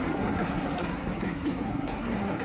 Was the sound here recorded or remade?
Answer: remade